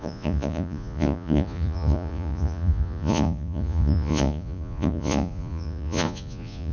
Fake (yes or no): yes